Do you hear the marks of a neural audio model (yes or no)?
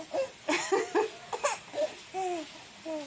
no